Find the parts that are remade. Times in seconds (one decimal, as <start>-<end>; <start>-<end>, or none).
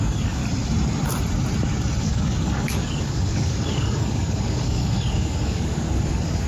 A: 0.0-0.4; 2.0-6.5